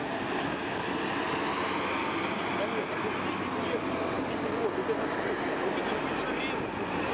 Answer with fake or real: real